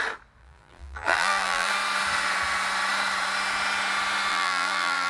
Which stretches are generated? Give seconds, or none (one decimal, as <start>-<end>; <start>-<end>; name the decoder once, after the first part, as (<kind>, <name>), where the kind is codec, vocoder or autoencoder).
0.4-1.7 (vocoder, BigVGAN v2); 4.3-5.1